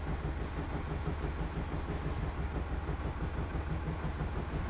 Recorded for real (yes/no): yes